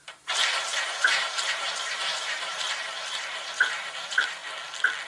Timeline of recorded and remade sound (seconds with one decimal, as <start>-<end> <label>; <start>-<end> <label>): 0.0-4.4 remade; 4.4-5.1 recorded